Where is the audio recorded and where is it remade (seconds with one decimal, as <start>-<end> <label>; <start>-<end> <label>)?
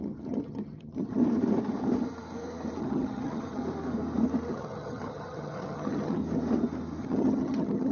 0.0-1.2 remade; 1.2-2.8 recorded; 2.8-3.6 remade; 3.6-4.5 recorded; 4.5-6.2 remade; 6.2-7.0 recorded; 7.0-7.9 remade